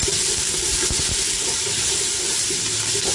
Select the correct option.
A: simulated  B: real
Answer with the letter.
B